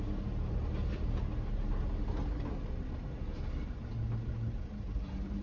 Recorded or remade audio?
recorded